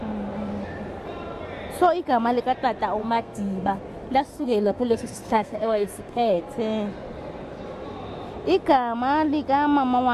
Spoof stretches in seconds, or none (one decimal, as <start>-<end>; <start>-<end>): 3.0-3.8; 4.3-6.4